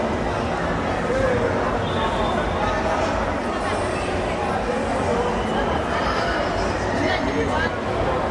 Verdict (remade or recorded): recorded